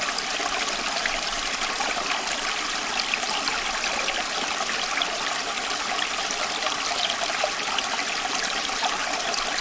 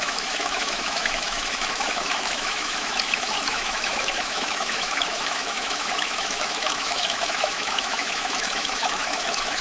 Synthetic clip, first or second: second